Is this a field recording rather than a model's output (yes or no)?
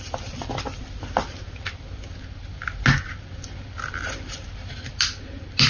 yes